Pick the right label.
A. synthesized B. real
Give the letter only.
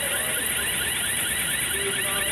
B